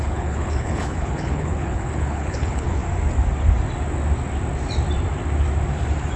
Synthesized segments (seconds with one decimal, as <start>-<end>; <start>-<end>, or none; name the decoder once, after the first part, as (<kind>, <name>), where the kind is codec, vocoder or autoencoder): 0.0-2.8 (codec, HILCodec)